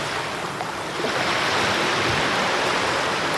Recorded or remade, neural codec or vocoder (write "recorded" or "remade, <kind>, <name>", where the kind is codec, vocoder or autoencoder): recorded